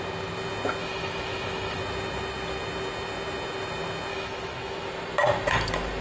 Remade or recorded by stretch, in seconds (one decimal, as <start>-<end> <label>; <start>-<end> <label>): 0.0-0.8 recorded; 0.8-1.8 remade; 1.8-4.1 recorded; 4.1-4.9 remade; 4.9-6.0 recorded